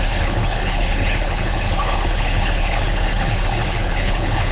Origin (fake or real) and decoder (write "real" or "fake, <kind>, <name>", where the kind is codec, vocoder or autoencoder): fake, codec, HILCodec